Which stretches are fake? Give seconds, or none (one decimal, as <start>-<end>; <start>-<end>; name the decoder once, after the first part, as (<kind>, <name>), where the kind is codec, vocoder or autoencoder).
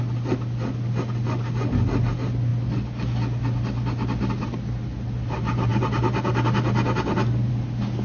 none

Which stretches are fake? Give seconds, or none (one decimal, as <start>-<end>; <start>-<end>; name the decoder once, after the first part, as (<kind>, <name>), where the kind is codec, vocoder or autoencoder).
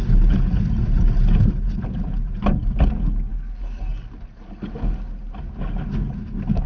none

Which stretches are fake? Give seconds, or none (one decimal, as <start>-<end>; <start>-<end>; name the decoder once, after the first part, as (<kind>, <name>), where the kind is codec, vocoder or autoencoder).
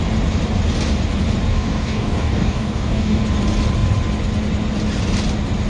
1.5-3.2 (codec, DAC)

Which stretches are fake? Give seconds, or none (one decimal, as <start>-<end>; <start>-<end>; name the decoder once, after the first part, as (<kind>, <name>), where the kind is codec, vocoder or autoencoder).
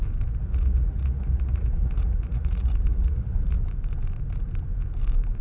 0.4-3.6 (vocoder, Vocos)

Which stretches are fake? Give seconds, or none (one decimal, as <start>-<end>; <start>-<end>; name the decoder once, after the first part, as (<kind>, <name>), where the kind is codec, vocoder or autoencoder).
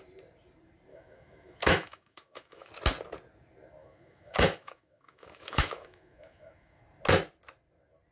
0.9-2.7 (autoencoder, DAC-VAE); 3.8-6.8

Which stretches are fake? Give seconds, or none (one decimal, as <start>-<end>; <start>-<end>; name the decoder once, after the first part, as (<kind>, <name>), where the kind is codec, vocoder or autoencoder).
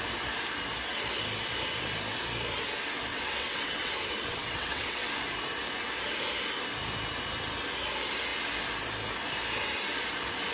3.1-3.9 (vocoder, WaveNeXt); 4.3-5.1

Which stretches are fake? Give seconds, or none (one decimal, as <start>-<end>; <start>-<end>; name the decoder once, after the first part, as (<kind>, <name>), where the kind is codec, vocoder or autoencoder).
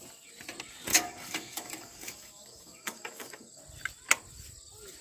0.9-3.6 (codec, DAC)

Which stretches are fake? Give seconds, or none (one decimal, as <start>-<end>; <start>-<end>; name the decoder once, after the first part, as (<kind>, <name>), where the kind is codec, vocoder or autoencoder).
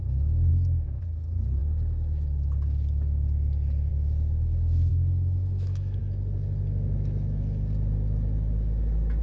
0.5-1.0 (autoencoder, DAC-VAE); 4.9-6.0